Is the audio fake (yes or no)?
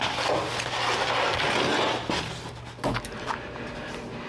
no